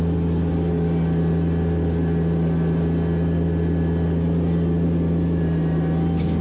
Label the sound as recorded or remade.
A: recorded